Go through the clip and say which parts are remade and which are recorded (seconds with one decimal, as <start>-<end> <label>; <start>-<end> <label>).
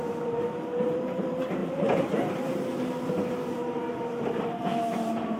0.0-3.8 remade; 3.8-4.6 recorded; 4.6-5.4 remade